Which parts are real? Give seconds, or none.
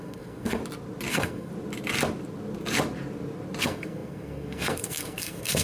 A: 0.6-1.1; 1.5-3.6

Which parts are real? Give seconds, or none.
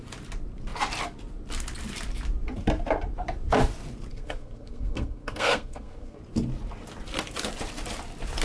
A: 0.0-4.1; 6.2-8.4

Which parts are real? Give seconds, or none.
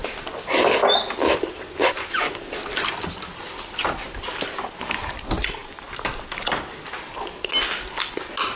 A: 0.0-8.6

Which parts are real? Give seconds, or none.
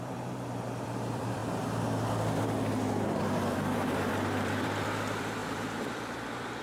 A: 1.4-3.2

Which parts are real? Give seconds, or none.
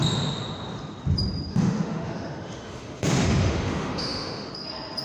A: 0.0-1.5; 4.5-5.0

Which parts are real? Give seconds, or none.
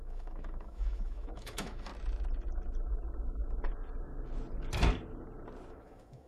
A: 1.9-5.7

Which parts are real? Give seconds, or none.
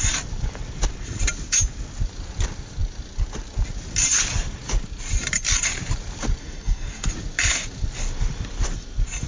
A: 0.0-6.4; 7.1-9.3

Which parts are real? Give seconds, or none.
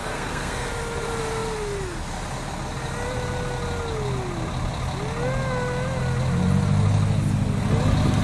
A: 0.7-8.2